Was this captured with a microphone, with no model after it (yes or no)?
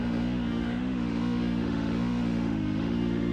no